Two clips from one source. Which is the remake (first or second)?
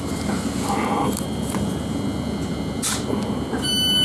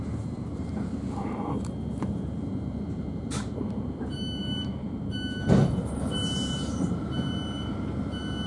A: second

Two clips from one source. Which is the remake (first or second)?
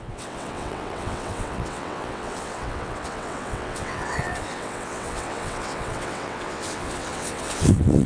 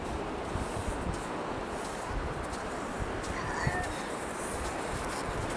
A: first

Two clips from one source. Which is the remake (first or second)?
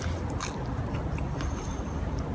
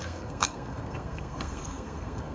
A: second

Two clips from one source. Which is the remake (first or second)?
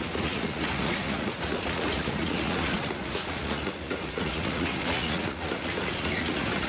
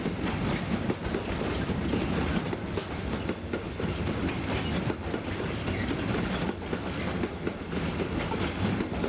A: first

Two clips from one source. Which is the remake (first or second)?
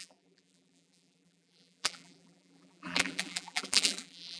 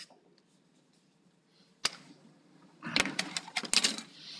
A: first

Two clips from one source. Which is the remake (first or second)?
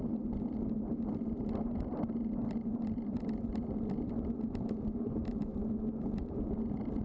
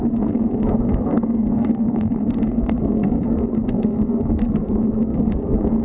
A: second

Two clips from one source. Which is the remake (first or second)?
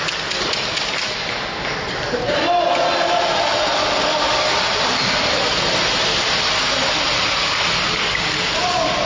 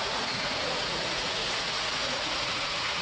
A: second